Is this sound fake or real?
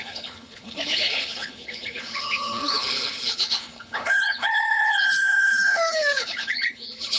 fake